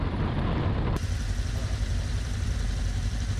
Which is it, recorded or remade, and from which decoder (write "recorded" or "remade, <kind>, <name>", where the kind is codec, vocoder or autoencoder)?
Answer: recorded